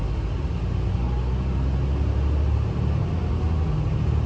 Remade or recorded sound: recorded